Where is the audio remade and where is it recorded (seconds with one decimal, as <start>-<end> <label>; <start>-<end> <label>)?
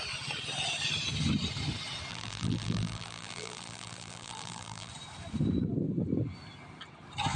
0.0-2.1 recorded; 2.1-4.9 remade; 4.9-7.4 recorded